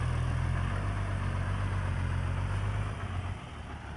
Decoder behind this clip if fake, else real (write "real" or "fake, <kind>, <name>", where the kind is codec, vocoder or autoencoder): real